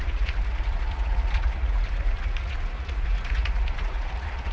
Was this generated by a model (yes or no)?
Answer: yes